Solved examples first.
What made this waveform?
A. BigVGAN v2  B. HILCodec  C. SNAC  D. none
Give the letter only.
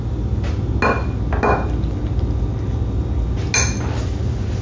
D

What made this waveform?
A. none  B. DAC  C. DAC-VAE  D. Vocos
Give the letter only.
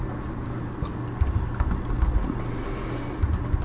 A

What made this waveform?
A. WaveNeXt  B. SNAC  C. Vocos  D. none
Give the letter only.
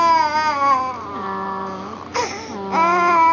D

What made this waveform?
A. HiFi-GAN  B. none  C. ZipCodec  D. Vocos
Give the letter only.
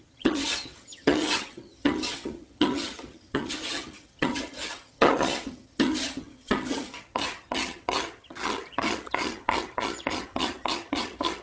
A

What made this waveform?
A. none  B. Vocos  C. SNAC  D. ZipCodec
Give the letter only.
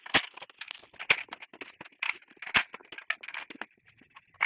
A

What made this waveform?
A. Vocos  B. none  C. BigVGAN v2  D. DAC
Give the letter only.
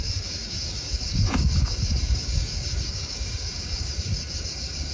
D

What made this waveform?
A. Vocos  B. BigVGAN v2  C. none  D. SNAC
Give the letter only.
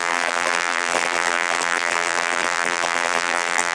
B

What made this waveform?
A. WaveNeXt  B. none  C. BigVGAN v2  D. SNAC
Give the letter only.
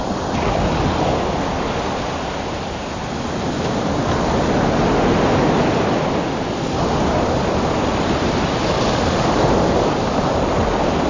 B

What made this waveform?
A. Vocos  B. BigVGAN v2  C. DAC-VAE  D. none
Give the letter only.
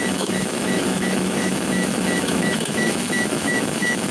C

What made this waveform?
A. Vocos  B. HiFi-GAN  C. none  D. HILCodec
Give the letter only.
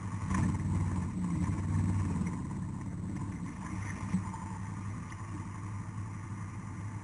C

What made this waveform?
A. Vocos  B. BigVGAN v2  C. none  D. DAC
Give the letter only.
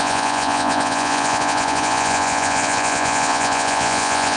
A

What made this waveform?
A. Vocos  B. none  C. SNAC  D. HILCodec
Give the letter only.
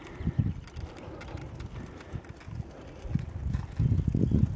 B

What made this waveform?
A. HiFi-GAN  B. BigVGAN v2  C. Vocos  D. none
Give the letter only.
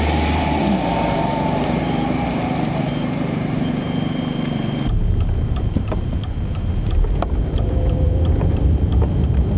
B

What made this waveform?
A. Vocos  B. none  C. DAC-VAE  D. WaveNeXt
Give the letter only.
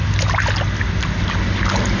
B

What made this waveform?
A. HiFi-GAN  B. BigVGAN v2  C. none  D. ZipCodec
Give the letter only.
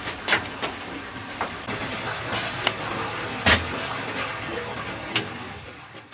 C